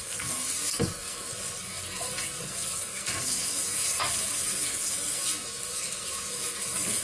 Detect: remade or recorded remade